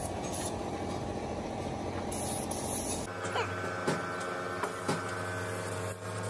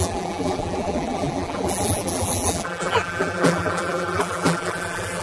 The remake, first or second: second